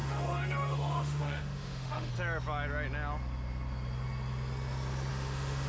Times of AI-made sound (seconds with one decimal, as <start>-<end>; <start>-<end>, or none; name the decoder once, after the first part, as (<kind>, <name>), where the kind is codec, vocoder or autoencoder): 0.0-2.1 (autoencoder, DAC-VAE); 5.1-5.7